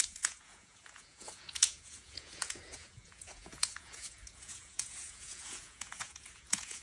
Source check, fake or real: fake